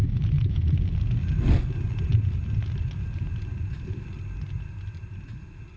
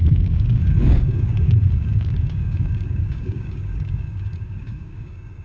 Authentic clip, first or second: first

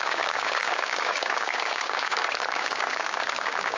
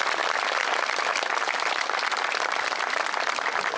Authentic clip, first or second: second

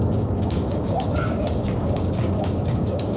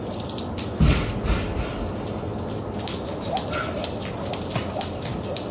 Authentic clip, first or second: second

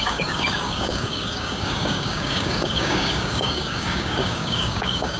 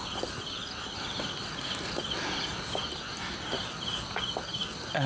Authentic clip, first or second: second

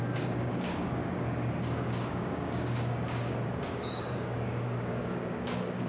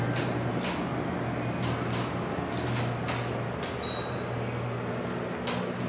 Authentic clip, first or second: second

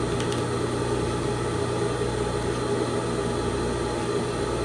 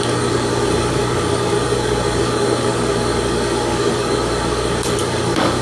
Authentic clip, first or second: first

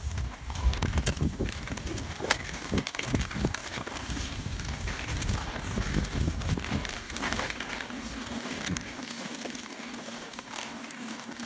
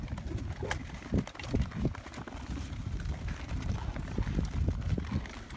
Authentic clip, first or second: second